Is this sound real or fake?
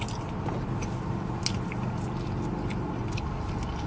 real